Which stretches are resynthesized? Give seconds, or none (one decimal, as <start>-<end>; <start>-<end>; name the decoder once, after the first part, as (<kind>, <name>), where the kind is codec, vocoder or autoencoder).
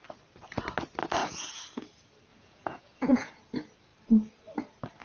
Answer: 1.2-1.8 (vocoder, Vocos); 2.3-3.3